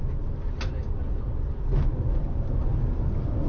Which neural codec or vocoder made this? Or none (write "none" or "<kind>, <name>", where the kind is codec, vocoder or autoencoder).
none